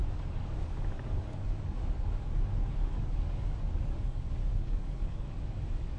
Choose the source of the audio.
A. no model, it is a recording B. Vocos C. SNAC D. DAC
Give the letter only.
D